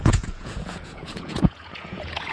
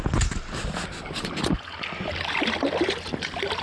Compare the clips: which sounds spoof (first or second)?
first